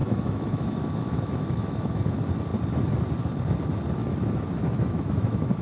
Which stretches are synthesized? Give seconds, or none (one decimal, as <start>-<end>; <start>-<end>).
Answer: 0.0-2.1; 4.0-5.6